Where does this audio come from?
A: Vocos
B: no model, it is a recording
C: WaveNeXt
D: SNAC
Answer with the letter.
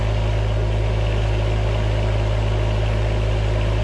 B